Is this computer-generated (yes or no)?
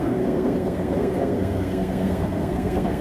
yes